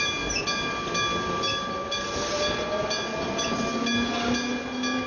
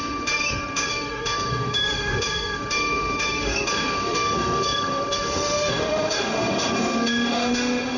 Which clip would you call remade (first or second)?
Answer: second